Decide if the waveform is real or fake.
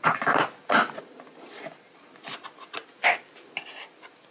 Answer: real